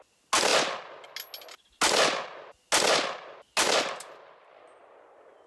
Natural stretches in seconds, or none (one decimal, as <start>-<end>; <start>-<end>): 0.0-5.5